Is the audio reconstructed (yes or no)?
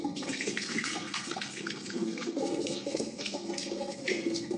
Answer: yes